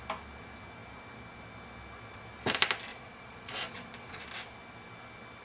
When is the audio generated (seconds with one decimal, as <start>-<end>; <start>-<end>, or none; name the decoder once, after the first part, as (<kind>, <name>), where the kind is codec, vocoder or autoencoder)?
2.9-4.2 (vocoder, Vocos)